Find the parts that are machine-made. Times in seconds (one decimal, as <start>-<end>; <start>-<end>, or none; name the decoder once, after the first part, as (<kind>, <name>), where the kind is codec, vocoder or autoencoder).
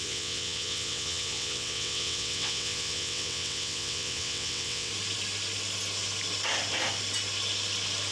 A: 0.0-4.9 (vocoder, WaveNeXt)